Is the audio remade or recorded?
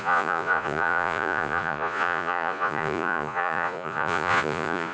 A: remade